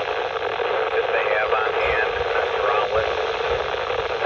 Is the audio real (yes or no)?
yes